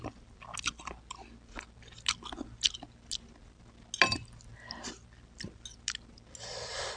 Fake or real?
real